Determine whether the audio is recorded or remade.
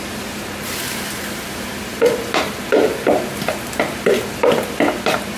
recorded